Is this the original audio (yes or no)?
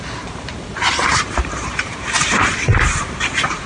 no